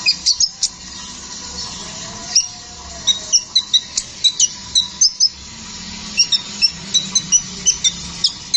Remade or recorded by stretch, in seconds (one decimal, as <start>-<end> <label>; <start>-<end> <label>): 0.0-8.6 recorded